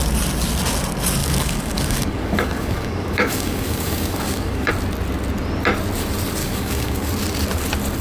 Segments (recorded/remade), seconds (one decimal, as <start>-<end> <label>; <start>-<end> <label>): 0.0-1.2 recorded; 1.2-4.7 remade; 4.7-6.4 recorded; 6.4-7.1 remade; 7.1-8.0 recorded